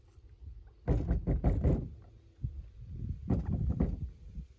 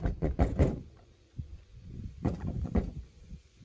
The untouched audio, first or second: first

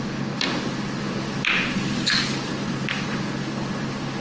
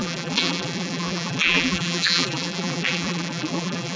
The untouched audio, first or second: first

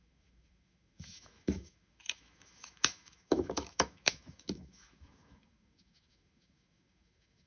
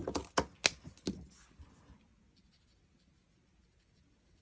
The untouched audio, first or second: second